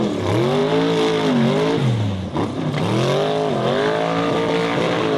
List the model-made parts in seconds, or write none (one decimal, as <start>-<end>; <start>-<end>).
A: none